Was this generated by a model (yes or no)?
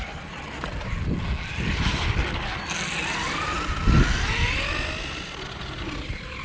no